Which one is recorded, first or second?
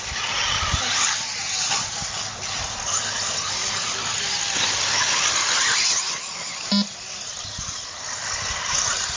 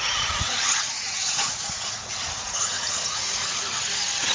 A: first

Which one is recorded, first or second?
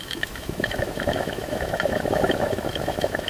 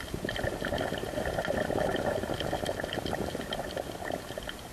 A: second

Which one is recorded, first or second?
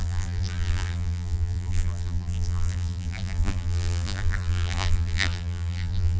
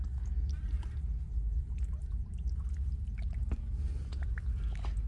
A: second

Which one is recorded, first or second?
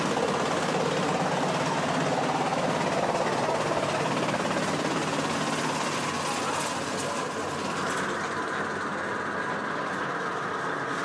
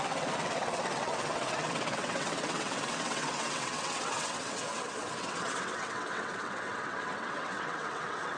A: first